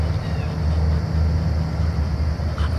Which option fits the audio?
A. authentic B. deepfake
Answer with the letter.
A